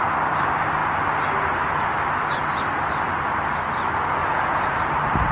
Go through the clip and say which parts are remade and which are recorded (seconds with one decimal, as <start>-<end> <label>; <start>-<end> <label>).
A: 0.0-4.2 recorded; 4.2-4.8 remade; 4.8-5.3 recorded